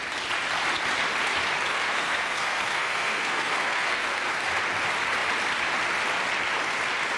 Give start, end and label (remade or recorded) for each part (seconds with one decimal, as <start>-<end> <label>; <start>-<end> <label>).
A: 0.0-1.7 recorded; 1.7-4.3 remade; 4.3-7.2 recorded